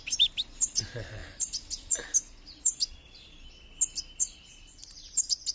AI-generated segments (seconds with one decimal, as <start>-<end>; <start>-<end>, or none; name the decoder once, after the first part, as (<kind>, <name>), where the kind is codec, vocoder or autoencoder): none